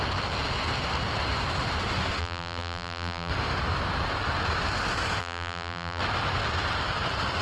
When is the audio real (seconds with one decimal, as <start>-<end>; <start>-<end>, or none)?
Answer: 0.0-2.2; 3.3-5.2; 6.0-7.4